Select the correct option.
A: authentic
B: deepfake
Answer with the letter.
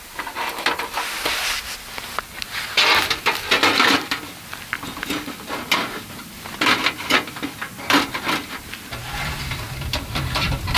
A